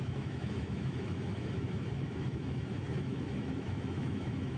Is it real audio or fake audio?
fake